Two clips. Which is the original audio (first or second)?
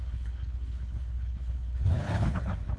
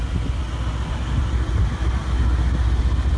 second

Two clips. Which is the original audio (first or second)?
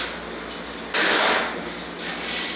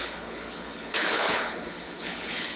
first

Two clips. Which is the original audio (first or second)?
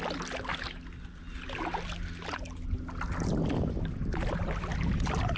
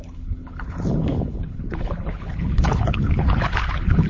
first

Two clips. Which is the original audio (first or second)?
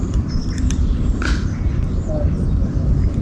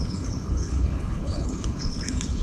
first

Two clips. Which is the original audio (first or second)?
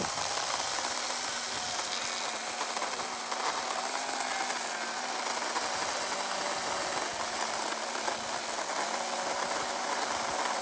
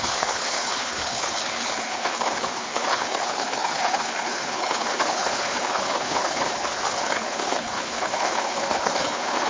first